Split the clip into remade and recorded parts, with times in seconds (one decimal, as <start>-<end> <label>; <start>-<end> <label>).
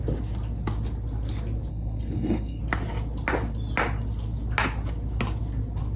0.0-1.7 recorded; 1.7-2.6 remade; 2.6-6.0 recorded